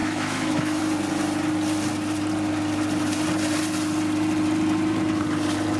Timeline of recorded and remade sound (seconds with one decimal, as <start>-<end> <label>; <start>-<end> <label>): 0.0-0.8 remade; 0.8-5.8 recorded